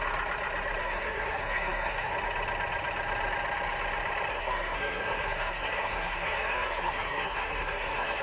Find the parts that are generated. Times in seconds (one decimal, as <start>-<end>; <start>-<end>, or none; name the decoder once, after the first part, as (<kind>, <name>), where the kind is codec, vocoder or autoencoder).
0.8-2.1 (codec, SNAC); 4.3-8.2